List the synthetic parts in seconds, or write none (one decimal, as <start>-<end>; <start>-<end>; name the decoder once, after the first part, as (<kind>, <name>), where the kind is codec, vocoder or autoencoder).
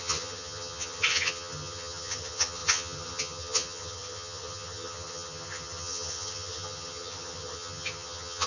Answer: 0.0-8.5 (vocoder, HiFi-GAN)